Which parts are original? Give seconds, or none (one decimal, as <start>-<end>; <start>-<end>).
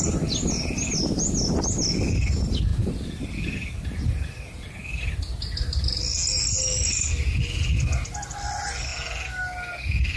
0.0-10.2